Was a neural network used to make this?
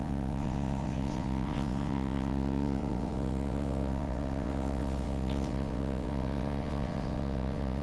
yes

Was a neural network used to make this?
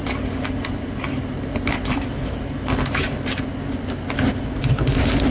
yes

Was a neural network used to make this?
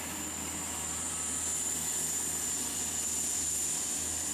no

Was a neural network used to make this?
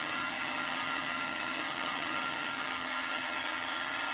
yes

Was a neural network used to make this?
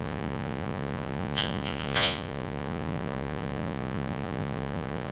yes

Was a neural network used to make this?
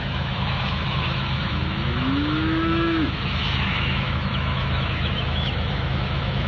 yes